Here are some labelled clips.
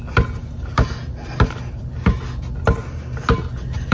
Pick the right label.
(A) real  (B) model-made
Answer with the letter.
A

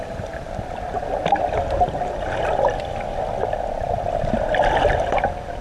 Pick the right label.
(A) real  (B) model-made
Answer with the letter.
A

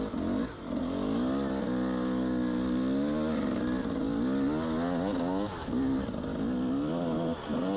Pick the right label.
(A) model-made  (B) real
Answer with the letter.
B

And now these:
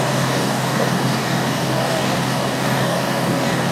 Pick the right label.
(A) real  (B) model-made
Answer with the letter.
B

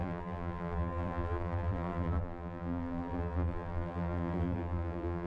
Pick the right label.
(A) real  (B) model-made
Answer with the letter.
B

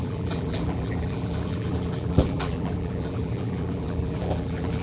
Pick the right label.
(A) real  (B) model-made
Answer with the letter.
B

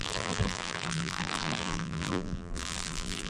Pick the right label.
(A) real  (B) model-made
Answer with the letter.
B